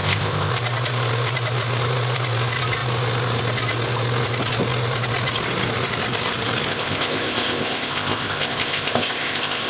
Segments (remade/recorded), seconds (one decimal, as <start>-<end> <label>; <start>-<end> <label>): 0.0-0.5 remade; 0.5-6.7 recorded; 6.7-9.7 remade